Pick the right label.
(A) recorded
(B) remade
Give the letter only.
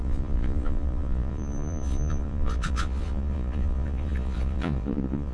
B